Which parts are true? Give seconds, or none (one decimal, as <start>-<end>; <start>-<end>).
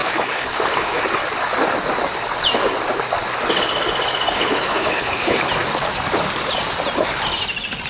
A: 1.0-4.3; 5.5-7.9